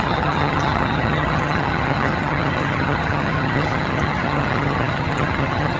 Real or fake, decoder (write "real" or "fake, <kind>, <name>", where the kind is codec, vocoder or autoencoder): fake, vocoder, HiFi-GAN